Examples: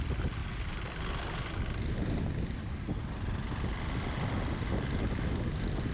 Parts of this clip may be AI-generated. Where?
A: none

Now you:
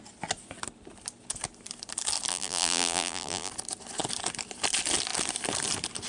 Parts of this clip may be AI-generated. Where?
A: 2.3-3.5 (vocoder, BigVGAN v2)

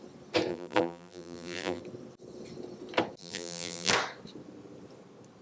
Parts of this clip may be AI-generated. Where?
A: 0.5-1.8 (vocoder, BigVGAN v2); 3.2-3.9

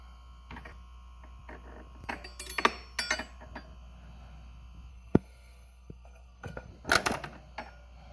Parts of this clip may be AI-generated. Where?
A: 4.9-6.7 (codec, SNAC)

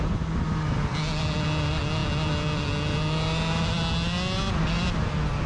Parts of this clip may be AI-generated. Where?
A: none

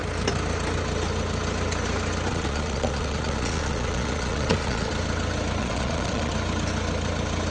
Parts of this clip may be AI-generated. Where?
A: 2.3-4.9 (vocoder, Vocos); 5.6-6.3